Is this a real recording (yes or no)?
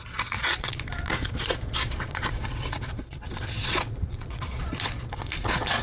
no